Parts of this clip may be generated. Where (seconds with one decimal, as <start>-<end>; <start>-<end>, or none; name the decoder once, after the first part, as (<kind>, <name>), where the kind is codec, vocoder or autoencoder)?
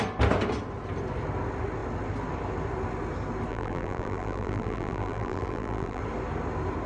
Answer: 3.5-6.0 (vocoder, BigVGAN v2)